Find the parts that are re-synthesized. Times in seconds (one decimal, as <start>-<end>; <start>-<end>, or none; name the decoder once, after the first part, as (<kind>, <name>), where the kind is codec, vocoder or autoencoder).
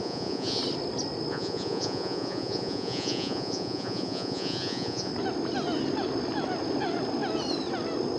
0.0-0.6 (vocoder, Vocos); 1.3-5.1